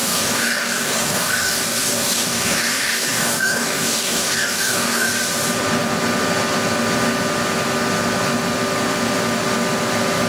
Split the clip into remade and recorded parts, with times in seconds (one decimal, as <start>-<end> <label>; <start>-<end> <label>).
0.0-5.1 remade; 5.1-10.3 recorded